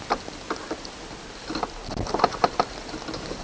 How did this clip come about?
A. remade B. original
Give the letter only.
B